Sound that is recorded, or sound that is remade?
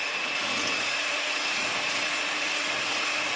remade